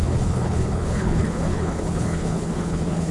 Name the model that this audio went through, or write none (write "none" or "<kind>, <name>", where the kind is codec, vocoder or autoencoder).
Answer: codec, HILCodec